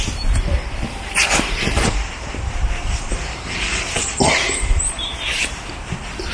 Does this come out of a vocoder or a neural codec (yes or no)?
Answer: yes